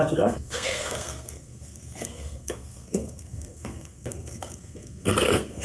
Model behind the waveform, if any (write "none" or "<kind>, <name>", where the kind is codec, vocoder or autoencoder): codec, SNAC